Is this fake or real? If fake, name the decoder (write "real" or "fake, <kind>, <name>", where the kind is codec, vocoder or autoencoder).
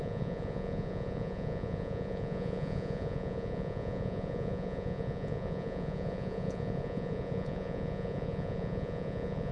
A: fake, vocoder, Vocos